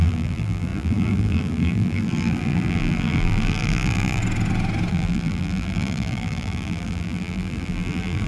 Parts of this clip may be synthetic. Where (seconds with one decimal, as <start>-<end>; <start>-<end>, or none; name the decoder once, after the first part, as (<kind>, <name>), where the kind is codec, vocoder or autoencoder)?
0.0-4.2 (vocoder, BigVGAN v2); 4.9-8.3